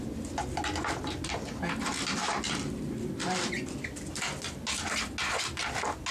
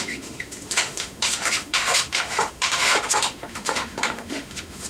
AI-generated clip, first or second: second